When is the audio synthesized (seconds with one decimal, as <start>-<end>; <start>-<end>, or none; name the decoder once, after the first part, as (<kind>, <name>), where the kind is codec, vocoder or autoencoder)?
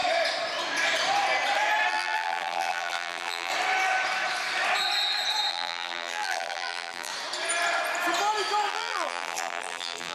1.9-3.5 (vocoder, BigVGAN v2); 5.5-7.1; 8.7-10.1